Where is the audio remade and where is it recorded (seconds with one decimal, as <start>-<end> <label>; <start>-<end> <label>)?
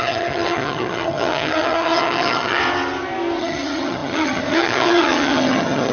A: 0.0-2.6 remade; 2.6-3.4 recorded; 3.4-5.9 remade